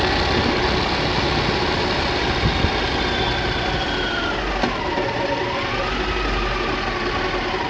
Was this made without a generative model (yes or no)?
yes